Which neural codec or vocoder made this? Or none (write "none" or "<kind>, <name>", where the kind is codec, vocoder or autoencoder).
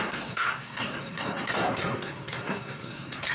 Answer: codec, SNAC